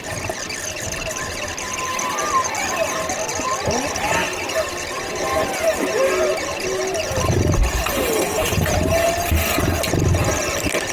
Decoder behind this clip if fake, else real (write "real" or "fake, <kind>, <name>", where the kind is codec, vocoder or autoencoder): real